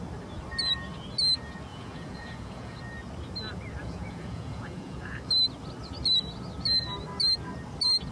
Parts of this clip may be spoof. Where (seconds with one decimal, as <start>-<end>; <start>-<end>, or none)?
1.7-2.8; 3.8-5.3